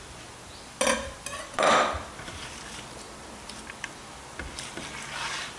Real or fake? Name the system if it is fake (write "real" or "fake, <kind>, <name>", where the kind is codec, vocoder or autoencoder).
fake, vocoder, BigVGAN v2